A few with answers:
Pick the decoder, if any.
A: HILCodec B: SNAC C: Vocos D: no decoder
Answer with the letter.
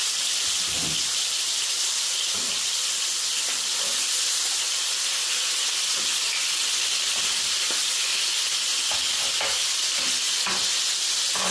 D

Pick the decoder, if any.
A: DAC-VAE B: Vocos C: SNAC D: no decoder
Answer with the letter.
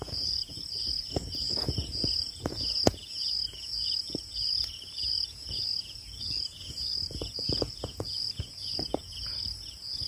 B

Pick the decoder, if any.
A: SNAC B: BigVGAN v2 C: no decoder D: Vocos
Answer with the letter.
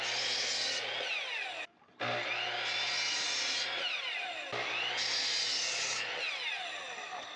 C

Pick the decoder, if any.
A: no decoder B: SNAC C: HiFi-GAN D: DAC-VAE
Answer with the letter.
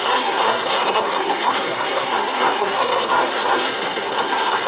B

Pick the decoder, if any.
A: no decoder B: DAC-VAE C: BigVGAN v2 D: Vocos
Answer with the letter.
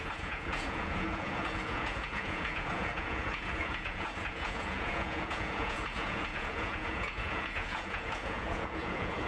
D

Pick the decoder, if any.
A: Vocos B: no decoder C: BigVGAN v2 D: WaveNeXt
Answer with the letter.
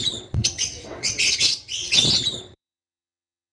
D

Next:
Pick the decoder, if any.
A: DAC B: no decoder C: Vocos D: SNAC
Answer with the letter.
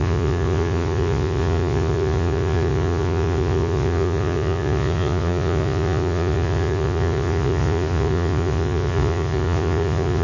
C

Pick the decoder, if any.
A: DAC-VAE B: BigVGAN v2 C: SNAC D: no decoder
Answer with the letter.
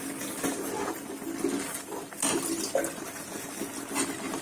D